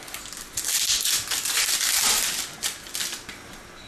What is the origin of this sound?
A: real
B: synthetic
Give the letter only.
A